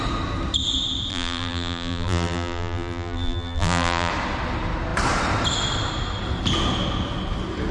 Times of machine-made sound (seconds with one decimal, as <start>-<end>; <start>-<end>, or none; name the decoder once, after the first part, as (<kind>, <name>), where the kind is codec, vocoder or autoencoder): 1.1-4.1 (vocoder, BigVGAN v2)